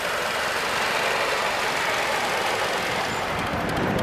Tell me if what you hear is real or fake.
real